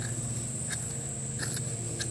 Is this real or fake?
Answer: real